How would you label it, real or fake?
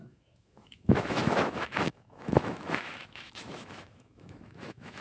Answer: fake